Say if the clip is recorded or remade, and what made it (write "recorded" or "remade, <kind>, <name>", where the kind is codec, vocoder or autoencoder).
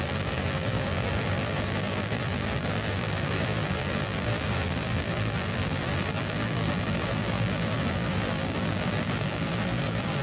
remade, vocoder, BigVGAN v2